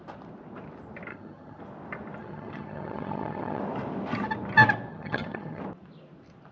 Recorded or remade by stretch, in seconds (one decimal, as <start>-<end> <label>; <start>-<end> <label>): 0.0-1.1 recorded; 1.1-1.6 remade; 1.6-2.2 recorded; 2.2-3.6 remade; 3.6-4.9 recorded; 4.9-5.6 remade; 5.6-6.5 recorded